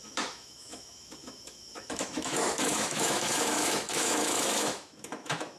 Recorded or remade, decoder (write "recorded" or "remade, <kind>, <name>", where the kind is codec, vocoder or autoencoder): remade, autoencoder, DAC-VAE